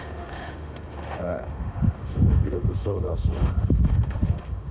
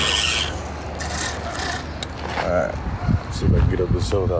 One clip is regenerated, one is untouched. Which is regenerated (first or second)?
first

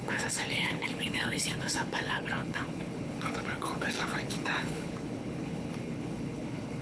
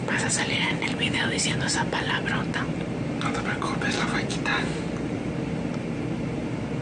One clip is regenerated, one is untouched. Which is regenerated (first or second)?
first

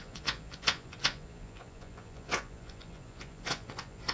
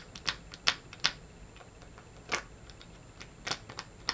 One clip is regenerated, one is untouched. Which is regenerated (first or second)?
first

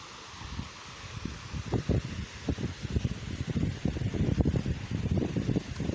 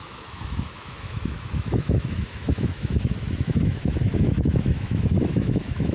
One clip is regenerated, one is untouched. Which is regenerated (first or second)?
second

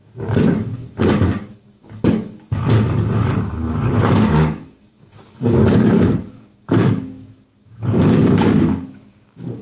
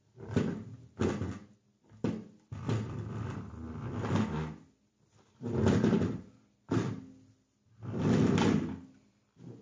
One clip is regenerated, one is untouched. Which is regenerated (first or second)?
first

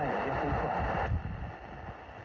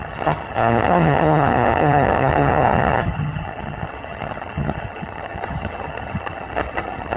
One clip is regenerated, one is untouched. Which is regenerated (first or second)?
second